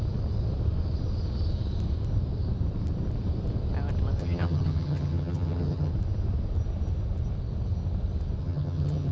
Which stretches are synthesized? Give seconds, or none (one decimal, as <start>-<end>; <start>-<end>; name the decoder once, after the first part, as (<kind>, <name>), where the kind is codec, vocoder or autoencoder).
4.2-5.9 (vocoder, HiFi-GAN); 8.4-9.1